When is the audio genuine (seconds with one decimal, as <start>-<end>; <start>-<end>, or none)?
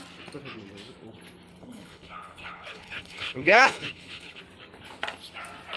0.0-1.6; 4.4-5.8